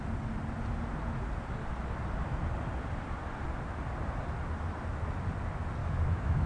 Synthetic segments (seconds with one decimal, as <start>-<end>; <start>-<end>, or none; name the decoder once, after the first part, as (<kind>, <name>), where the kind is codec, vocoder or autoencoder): 5.8-6.5 (autoencoder, DAC-VAE)